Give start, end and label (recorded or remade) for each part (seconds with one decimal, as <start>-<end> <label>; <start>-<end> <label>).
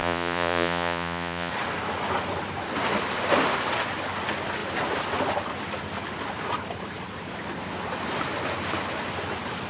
0.0-1.5 remade; 1.5-9.7 recorded